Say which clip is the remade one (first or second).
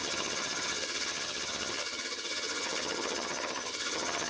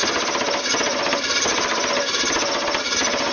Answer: first